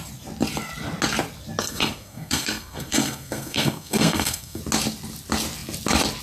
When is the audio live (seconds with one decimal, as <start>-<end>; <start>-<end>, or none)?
0.0-1.6; 4.6-6.2